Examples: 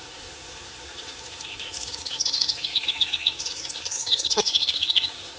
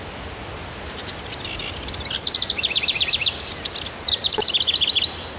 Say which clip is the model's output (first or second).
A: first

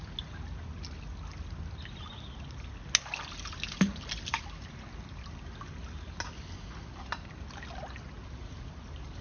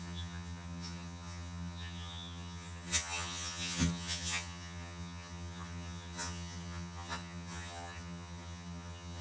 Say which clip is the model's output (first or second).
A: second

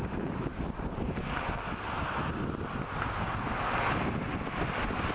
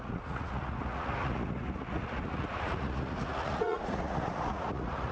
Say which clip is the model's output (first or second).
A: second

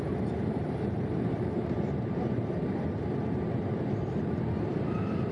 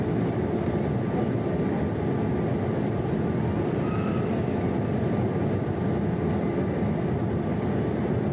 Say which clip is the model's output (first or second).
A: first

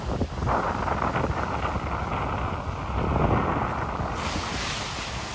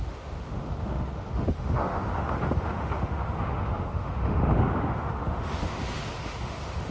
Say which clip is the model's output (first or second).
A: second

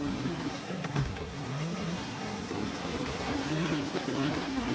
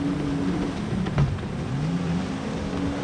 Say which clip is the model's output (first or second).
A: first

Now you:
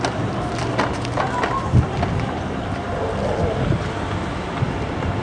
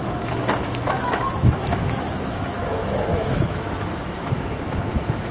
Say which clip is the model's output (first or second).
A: second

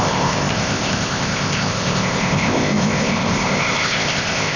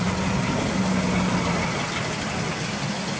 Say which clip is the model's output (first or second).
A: first